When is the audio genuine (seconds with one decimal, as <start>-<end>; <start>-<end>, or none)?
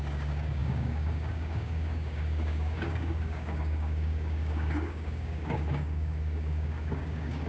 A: none